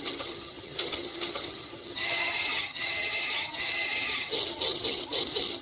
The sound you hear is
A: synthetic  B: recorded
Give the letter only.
A